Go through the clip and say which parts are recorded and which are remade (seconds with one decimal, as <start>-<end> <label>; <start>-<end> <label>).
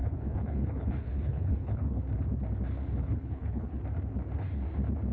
0.0-2.0 remade; 2.0-3.0 recorded; 3.0-3.8 remade; 3.8-5.1 recorded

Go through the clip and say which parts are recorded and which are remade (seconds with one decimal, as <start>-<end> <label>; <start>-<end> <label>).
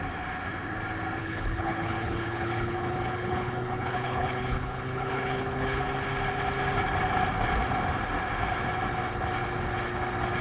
0.0-1.2 recorded; 1.2-5.8 remade; 5.8-10.4 recorded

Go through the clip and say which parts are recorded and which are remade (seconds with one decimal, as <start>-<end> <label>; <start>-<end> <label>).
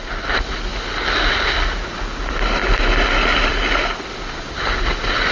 0.0-5.3 recorded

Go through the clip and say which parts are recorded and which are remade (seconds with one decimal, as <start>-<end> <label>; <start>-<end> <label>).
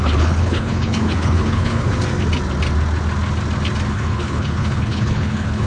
0.0-1.9 remade; 1.9-3.9 recorded; 3.9-5.7 remade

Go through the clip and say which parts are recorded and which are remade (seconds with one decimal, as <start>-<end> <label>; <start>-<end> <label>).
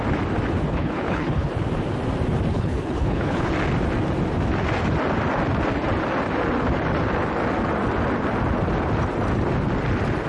0.0-0.7 recorded; 0.7-1.5 remade; 1.5-2.5 recorded; 2.5-3.5 remade; 3.5-10.3 recorded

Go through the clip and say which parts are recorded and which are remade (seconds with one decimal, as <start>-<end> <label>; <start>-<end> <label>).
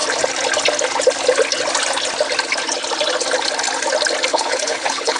0.0-4.3 recorded; 4.3-5.2 remade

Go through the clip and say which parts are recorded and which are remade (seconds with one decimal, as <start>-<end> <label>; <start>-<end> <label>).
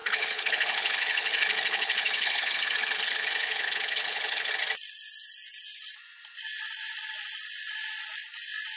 0.0-4.5 remade; 4.5-8.8 recorded